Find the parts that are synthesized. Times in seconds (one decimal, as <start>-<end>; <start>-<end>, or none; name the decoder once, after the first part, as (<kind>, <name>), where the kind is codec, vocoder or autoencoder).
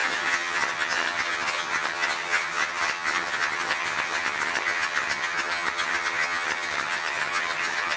0.0-8.0 (vocoder, HiFi-GAN)